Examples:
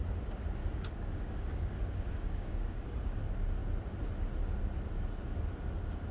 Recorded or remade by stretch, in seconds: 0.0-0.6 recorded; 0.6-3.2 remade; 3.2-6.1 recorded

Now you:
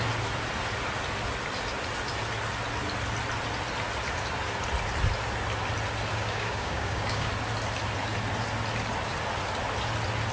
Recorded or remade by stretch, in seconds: 0.0-6.1 recorded; 6.1-7.3 remade; 7.3-10.3 recorded

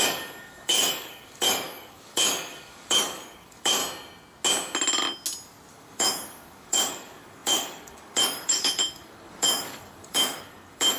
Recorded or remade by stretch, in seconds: 0.0-3.8 remade; 3.8-5.7 recorded; 5.7-11.0 remade